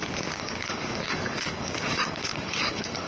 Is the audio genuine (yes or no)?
no